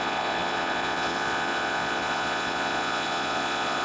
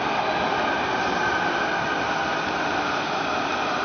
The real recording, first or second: second